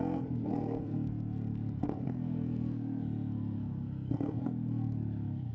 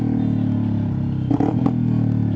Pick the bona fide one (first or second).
second